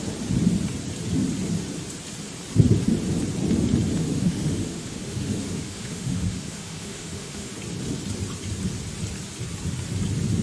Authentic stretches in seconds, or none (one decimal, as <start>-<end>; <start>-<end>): 0.0-4.0; 7.5-10.4